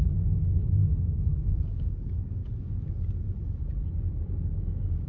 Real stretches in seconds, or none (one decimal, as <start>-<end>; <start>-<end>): 2.4-4.1